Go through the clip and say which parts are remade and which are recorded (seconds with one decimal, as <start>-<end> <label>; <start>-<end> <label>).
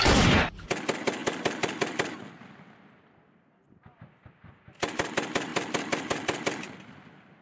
0.0-7.4 recorded